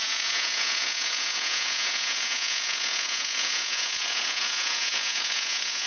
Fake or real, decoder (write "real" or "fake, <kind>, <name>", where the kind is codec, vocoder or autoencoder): fake, vocoder, Vocos